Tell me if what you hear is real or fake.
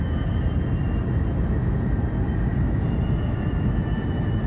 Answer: real